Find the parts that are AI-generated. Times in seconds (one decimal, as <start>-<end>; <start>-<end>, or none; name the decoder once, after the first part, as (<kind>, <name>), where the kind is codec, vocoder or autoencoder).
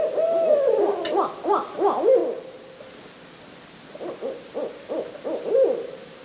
none